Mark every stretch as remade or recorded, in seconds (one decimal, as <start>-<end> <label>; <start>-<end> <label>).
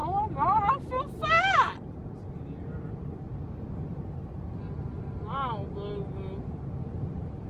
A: 0.0-7.5 recorded